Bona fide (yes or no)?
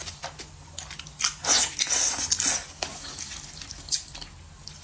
yes